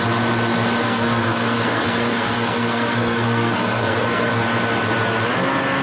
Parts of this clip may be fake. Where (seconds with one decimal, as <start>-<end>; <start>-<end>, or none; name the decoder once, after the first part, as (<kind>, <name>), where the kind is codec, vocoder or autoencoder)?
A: 0.8-4.3 (codec, SNAC)